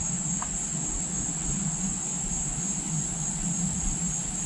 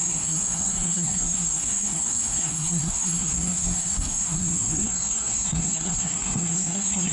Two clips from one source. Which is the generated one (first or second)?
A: second